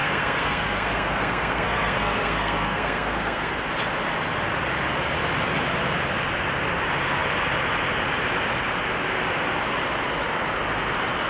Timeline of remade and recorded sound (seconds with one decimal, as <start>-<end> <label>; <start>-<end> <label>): 0.0-3.7 remade; 3.7-11.3 recorded